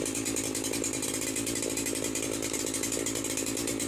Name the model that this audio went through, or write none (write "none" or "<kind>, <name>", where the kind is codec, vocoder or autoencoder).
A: none